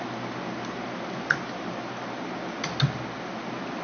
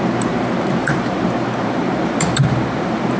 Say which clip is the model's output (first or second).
second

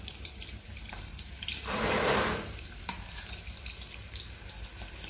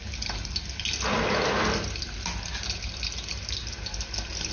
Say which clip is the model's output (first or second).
first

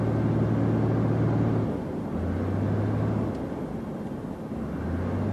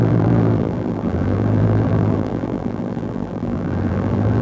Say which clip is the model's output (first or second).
second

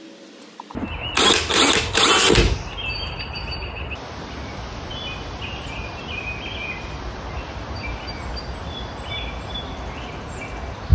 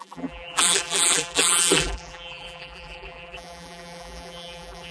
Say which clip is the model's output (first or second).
second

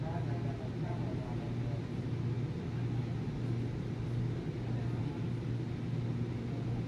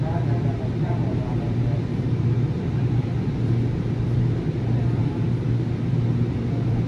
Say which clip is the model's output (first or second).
second